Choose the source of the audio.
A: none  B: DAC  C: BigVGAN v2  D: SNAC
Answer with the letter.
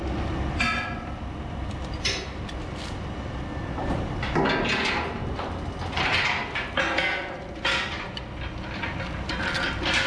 A